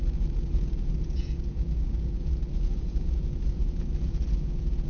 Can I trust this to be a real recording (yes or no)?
no